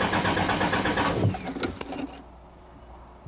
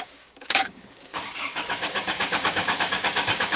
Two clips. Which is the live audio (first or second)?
first